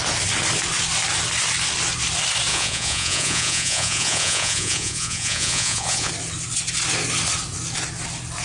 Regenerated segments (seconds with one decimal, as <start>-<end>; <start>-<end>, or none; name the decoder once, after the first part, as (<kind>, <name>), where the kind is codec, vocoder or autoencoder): 2.5-6.1 (vocoder, Vocos)